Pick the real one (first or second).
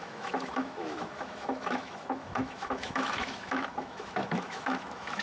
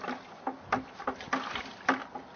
second